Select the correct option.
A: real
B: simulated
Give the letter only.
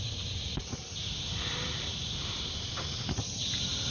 A